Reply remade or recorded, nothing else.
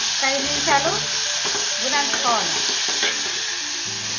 recorded